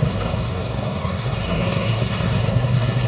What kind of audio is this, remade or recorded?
remade